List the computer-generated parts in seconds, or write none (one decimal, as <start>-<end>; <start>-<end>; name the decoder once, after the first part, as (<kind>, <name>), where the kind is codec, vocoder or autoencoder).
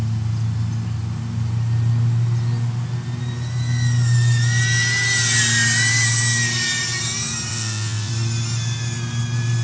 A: 7.5-8.1 (vocoder, WaveNeXt)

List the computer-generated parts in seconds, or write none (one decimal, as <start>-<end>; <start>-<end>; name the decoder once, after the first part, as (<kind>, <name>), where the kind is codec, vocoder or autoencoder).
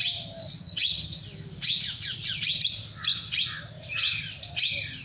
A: 0.6-1.2 (vocoder, HiFi-GAN)